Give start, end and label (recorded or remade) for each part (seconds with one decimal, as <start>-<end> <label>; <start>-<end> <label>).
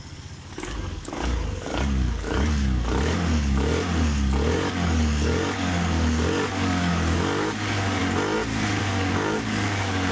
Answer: 0.0-8.0 remade; 8.0-8.8 recorded; 8.8-10.1 remade